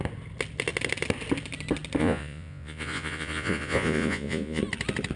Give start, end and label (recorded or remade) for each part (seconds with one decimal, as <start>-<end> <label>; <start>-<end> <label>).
0.0-2.0 recorded; 2.0-4.6 remade; 4.6-5.2 recorded